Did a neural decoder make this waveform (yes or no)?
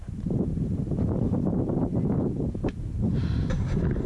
yes